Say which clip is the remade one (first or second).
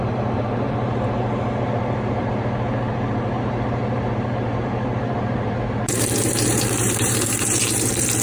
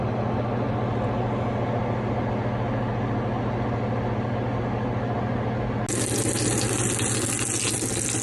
first